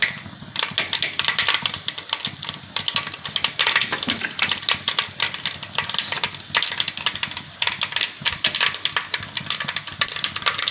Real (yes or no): yes